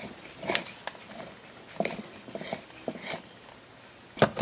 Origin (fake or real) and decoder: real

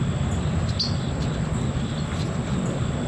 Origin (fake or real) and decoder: real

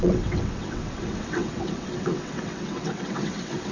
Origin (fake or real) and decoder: fake, vocoder, WaveNeXt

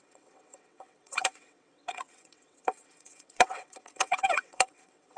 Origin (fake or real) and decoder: fake, vocoder, WaveNeXt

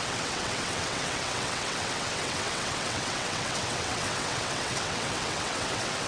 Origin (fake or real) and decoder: fake, vocoder, WaveNeXt